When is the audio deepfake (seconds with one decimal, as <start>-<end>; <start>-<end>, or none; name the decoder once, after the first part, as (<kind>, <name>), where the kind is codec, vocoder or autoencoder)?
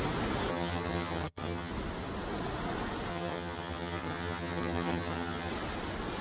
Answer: 0.5-1.7 (vocoder, HiFi-GAN); 3.1-5.5